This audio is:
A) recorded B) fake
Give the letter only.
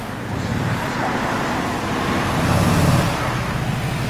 A